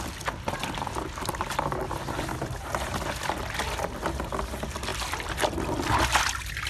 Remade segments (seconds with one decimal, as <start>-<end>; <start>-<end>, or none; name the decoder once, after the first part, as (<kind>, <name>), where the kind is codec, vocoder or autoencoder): none

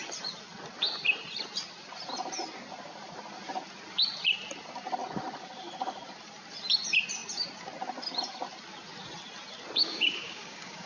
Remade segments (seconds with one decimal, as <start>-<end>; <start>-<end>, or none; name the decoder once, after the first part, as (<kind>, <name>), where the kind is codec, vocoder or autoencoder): 9.8-10.9 (codec, DAC)

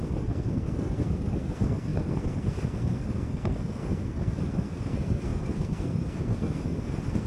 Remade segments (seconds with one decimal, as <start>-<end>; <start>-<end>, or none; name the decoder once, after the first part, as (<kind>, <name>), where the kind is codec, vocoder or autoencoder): 0.0-7.3 (codec, SNAC)

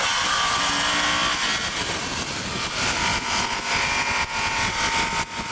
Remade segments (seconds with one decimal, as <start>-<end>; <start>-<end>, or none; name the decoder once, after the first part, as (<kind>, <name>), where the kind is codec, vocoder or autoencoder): none

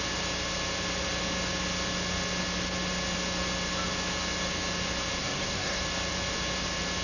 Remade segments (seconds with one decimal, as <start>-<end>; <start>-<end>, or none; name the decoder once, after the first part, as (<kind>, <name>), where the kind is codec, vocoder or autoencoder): 5.2-5.8 (codec, SNAC)

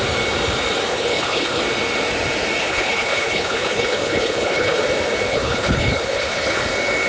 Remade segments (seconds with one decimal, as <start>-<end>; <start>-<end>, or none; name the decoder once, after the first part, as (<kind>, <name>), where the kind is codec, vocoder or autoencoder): 0.9-1.6 (codec, HILCodec); 2.6-4.8; 5.3-6.6